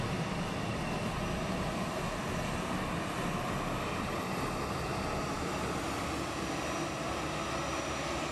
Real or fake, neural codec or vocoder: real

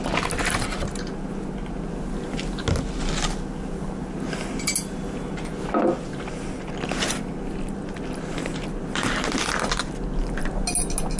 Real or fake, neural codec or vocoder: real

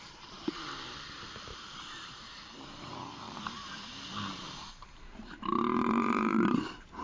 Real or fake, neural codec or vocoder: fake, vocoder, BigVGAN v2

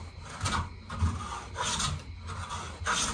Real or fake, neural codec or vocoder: real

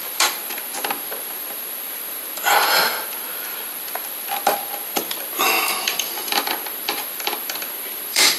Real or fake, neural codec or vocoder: fake, vocoder, BigVGAN v2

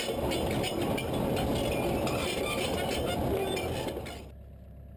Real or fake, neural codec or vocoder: real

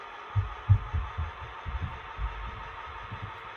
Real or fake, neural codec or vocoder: real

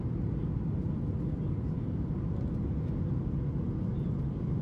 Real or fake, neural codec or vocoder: real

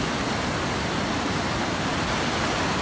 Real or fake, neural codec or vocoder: real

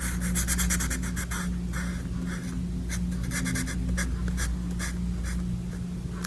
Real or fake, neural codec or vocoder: real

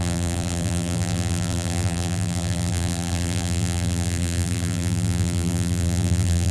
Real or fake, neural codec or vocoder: fake, vocoder, BigVGAN v2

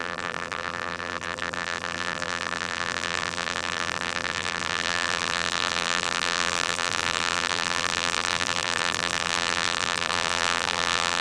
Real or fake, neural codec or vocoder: fake, vocoder, BigVGAN v2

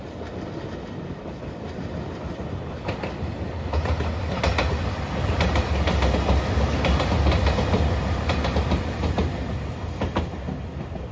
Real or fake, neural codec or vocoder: real